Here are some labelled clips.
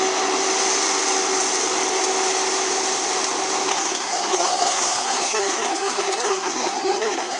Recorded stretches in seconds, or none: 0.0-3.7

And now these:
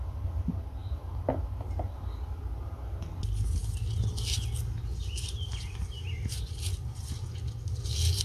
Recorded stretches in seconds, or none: 0.0-8.2

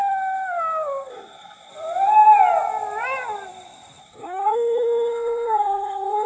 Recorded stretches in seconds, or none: 0.0-1.1; 1.7-4.0

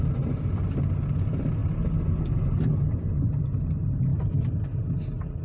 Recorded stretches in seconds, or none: 0.0-5.4

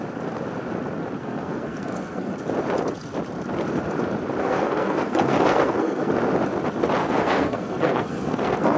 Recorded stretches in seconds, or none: 0.0-1.2; 2.3-4.4; 6.1-7.0